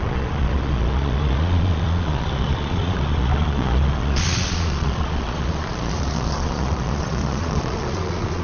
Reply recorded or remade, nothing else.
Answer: remade